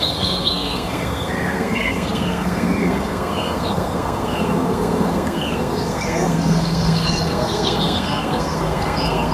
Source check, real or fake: fake